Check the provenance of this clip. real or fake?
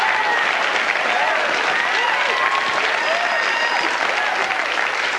real